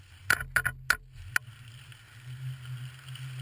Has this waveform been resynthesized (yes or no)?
no